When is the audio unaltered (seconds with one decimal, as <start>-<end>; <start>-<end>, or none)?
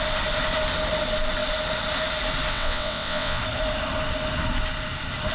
0.0-2.5; 3.4-5.3